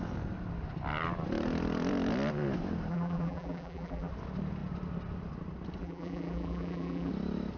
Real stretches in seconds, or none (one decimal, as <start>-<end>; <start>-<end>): 0.0-2.9; 4.1-5.8; 7.1-7.6

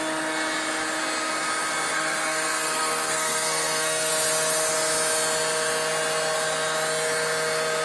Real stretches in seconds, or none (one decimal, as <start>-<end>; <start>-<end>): 0.0-1.9; 4.1-7.8

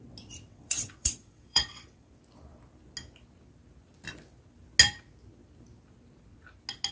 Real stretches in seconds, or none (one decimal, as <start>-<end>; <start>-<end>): 0.0-0.5; 2.1-6.9

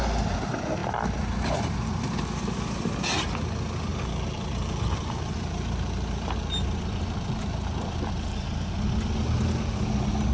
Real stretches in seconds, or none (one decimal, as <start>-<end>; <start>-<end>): 0.0-3.9; 8.9-10.3

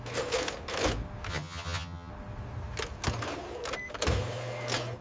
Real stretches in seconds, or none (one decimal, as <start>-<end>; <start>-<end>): 0.0-1.3; 2.1-5.0

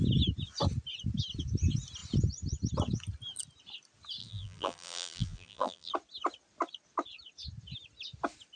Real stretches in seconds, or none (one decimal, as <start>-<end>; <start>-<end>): 0.0-4.2; 5.9-8.6

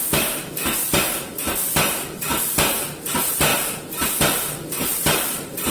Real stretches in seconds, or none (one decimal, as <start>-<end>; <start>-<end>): 0.0-4.9

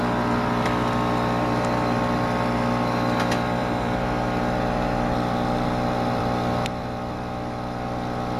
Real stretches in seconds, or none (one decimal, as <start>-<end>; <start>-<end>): 0.0-8.4